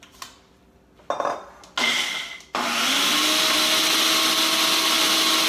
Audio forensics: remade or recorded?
recorded